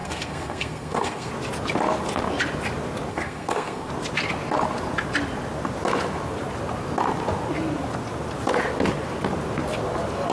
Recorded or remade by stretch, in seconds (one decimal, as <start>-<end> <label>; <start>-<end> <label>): 0.0-1.3 remade; 1.3-3.1 recorded; 3.1-3.9 remade; 3.9-10.3 recorded